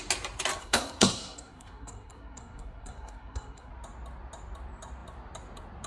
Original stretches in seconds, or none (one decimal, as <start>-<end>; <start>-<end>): 0.0-0.6; 3.7-5.9